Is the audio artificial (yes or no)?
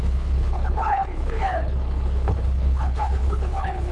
yes